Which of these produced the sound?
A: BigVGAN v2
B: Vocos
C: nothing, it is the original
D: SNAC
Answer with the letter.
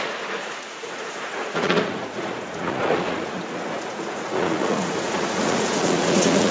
B